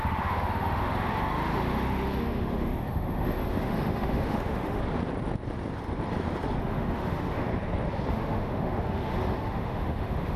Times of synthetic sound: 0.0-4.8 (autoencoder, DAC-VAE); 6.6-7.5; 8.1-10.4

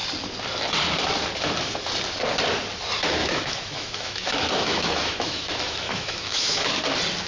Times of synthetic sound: 3.2-6.8 (autoencoder, DAC-VAE)

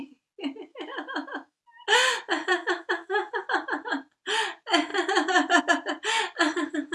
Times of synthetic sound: 0.7-1.6 (autoencoder, DAC-VAE); 2.5-3.3

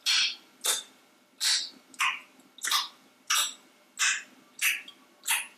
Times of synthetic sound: none

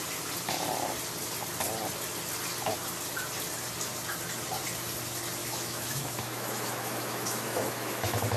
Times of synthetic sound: 5.4-8.4 (autoencoder, DAC-VAE)

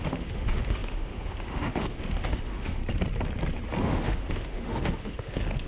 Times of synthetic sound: 0.0-2.8 (autoencoder, DAC-VAE); 3.8-5.7